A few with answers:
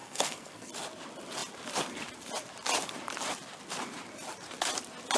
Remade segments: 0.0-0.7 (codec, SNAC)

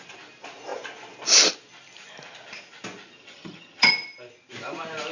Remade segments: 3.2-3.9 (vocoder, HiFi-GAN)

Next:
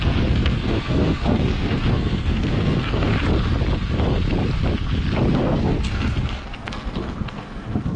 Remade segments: 0.0-3.1 (codec, SNAC); 5.3-8.0

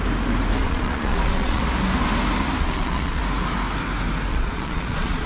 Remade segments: 0.6-1.6 (vocoder, Vocos); 2.6-3.2; 4.3-5.3

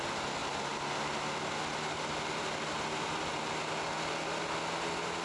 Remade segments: none

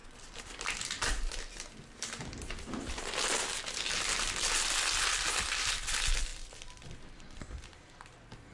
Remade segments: none

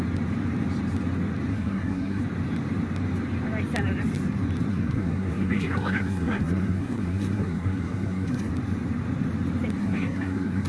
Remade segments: 1.5-2.2 (codec, SNAC); 4.7-8.5; 9.8-10.7